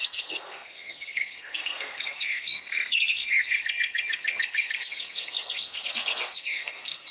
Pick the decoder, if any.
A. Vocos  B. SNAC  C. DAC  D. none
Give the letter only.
B